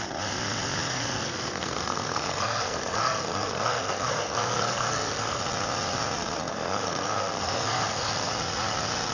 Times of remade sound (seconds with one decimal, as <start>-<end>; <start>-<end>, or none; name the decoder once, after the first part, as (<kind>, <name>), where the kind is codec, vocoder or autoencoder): 0.8-5.4 (codec, SNAC); 6.5-8.3